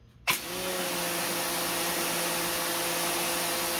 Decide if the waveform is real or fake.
real